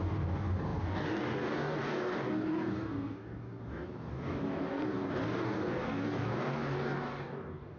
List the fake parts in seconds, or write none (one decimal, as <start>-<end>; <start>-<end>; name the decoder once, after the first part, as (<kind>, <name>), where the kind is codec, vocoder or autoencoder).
0.0-7.8 (codec, DAC)